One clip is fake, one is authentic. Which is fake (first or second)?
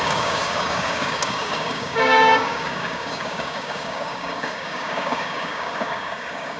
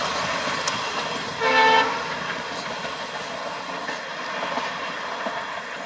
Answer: first